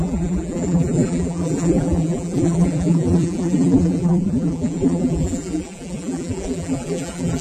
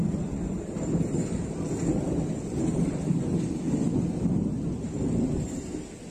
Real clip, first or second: second